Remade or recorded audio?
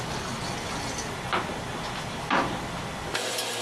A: recorded